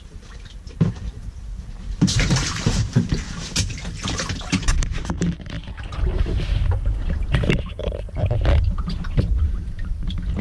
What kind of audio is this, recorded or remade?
remade